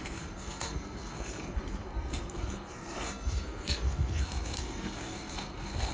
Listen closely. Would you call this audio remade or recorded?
remade